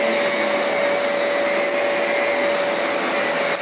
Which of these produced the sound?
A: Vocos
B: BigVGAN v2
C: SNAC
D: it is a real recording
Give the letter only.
D